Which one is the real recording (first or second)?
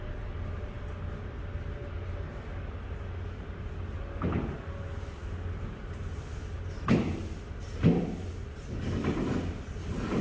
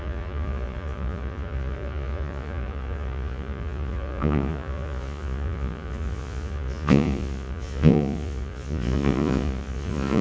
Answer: first